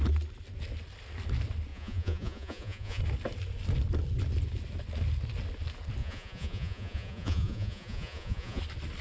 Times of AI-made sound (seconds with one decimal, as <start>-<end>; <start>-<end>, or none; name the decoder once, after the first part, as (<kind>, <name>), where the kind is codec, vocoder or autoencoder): 1.7-3.0 (vocoder, Vocos); 6.0-8.6